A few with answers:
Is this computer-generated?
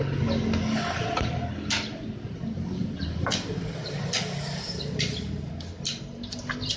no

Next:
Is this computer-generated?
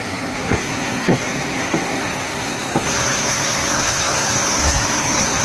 yes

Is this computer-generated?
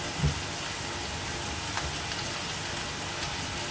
no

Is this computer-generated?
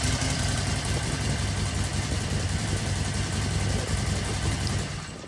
yes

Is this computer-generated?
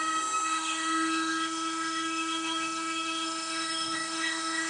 yes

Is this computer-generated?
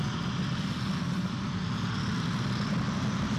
no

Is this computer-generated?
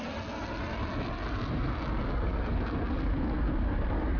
no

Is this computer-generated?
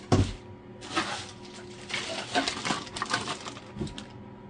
no